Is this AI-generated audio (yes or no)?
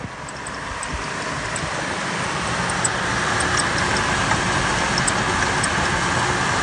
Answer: no